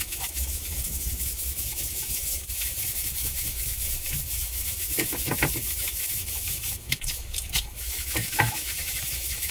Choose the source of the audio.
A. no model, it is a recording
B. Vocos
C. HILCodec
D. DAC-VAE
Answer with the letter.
D